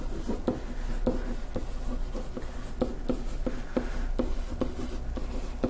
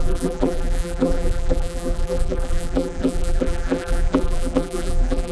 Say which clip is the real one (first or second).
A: first